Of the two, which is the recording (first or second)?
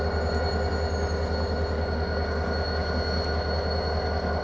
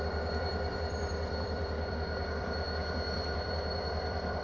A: first